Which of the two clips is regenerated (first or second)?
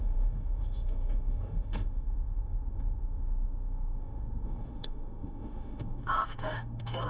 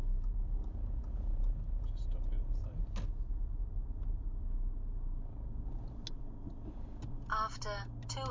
first